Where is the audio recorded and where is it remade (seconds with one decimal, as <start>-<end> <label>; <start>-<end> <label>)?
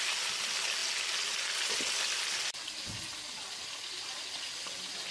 0.0-5.1 recorded